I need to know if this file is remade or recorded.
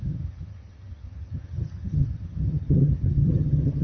remade